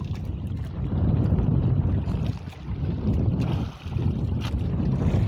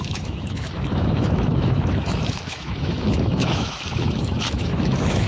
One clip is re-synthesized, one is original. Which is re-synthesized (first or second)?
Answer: second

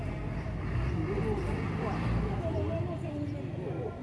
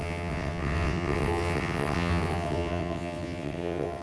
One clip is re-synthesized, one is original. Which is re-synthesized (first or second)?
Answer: second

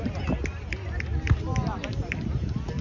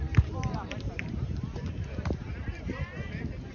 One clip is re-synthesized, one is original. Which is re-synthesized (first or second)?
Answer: second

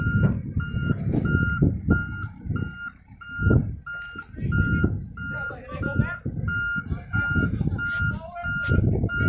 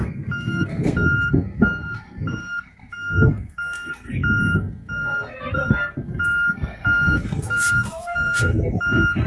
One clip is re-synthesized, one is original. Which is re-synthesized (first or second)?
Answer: second